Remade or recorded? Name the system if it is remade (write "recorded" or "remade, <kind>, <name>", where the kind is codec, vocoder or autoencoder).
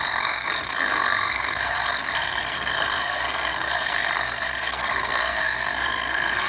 remade, codec, SNAC